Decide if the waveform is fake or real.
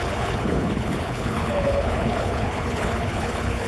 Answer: fake